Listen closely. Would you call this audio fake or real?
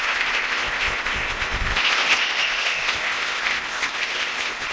fake